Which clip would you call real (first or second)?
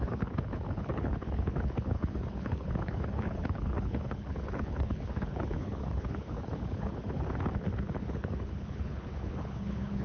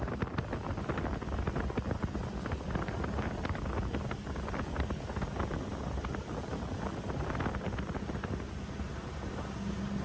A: second